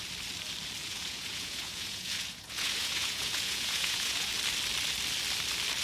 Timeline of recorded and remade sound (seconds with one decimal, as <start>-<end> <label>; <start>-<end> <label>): 0.0-0.8 recorded; 0.8-4.3 remade; 4.3-5.8 recorded